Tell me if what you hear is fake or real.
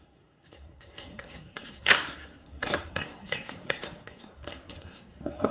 fake